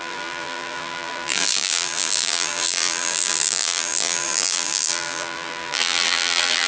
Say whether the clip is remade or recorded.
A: remade